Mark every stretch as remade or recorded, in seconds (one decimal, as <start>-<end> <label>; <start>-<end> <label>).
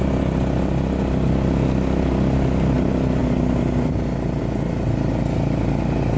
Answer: 0.0-6.2 recorded